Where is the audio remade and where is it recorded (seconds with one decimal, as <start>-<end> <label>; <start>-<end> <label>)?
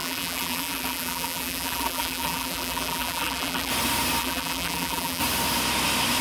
0.0-3.7 remade; 3.7-4.2 recorded; 4.2-5.2 remade; 5.2-6.2 recorded